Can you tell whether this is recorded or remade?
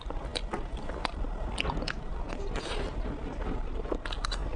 recorded